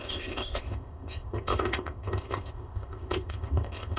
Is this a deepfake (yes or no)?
yes